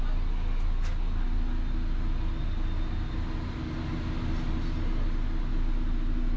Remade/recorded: recorded